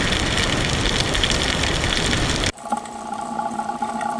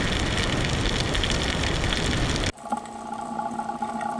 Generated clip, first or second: first